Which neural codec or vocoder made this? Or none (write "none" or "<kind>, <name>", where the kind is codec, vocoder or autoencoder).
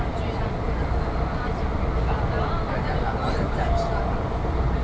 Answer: none